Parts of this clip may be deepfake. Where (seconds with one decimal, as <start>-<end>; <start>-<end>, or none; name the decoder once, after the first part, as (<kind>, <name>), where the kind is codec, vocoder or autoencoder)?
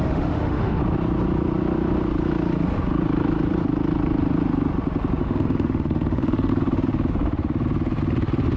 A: 0.0-0.8 (autoencoder, DAC-VAE); 5.2-6.5